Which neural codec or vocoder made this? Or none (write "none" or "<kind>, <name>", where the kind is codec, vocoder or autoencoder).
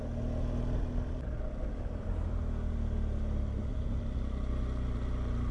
none